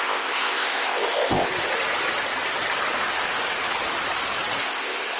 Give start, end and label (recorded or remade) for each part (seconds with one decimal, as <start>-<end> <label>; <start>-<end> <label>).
0.0-1.5 remade; 1.5-4.6 recorded; 4.6-5.2 remade